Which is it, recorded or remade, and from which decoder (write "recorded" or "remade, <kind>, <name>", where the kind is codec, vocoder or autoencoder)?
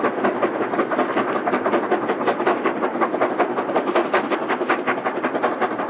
recorded